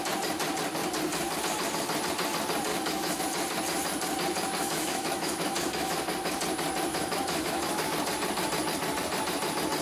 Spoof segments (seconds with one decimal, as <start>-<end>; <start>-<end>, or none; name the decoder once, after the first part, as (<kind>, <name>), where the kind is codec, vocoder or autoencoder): 2.7-3.2 (autoencoder, DAC-VAE); 4.6-6.4; 6.9-7.9